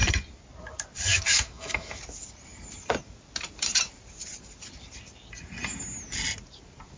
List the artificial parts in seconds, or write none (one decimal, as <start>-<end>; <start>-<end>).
1.1-2.0